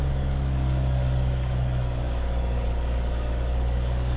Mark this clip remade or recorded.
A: remade